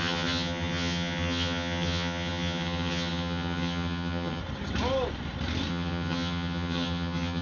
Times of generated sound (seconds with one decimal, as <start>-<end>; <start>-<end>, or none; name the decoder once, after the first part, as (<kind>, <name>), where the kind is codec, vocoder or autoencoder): 0.0-4.4 (vocoder, HiFi-GAN); 5.7-7.4